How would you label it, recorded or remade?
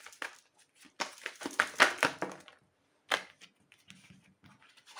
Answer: recorded